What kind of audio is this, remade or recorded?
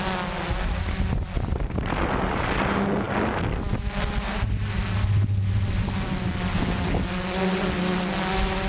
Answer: recorded